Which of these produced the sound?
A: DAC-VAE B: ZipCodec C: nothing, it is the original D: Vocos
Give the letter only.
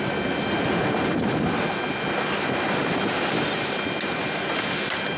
C